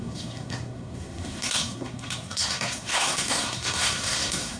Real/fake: fake